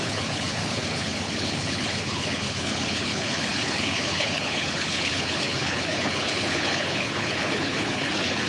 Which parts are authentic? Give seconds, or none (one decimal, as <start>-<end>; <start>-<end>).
none